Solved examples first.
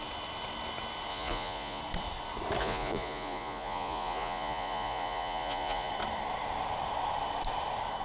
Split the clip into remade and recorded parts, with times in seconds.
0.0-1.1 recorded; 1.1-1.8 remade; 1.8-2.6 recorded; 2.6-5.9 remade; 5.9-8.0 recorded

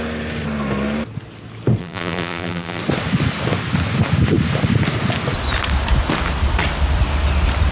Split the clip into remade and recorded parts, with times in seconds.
0.0-1.8 recorded; 1.8-2.8 remade; 2.8-7.7 recorded

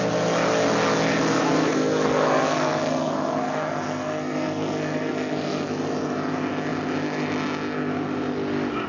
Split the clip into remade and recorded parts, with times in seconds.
0.0-1.3 recorded; 1.3-5.7 remade; 5.7-8.9 recorded

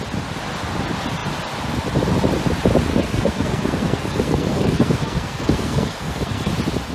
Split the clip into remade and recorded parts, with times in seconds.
0.0-2.9 recorded; 2.9-6.5 remade; 6.5-6.9 recorded

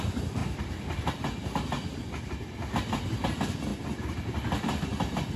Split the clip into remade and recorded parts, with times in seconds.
0.0-5.4 recorded